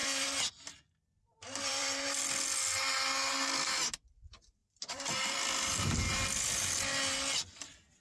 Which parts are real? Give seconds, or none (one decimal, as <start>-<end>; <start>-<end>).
0.8-1.3; 2.2-4.6; 6.6-8.0